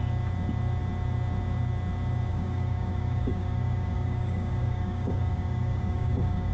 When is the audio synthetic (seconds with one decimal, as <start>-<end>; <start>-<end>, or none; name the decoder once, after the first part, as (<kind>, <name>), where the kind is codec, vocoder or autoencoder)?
2.3-6.5 (codec, DAC)